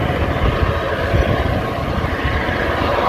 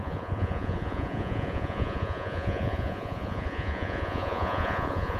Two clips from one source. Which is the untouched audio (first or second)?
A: first